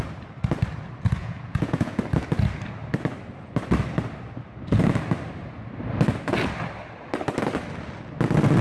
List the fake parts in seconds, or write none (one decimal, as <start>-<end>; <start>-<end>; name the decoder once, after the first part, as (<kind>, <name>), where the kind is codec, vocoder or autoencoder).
1.2-2.0 (vocoder, Vocos)